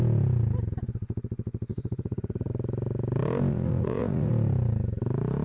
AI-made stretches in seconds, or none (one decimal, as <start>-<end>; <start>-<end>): 1.7-2.5; 3.5-4.3